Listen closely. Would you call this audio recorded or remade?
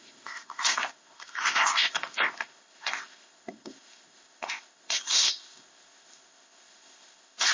remade